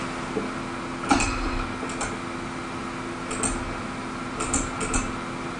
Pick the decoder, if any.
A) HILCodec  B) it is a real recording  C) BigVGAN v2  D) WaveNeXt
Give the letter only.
B